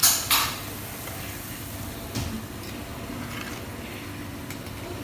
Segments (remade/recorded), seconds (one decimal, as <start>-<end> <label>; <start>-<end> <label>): 0.0-5.0 recorded